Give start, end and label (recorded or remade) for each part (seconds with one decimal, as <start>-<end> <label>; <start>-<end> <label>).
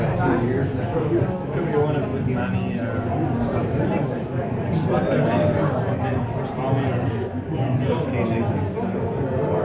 0.0-9.6 recorded